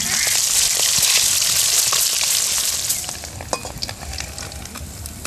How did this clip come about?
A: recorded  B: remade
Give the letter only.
A